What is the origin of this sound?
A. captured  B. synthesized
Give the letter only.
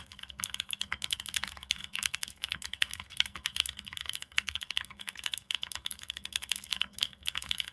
B